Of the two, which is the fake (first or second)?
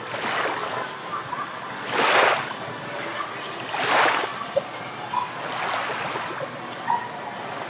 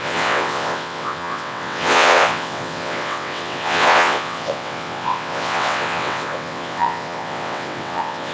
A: second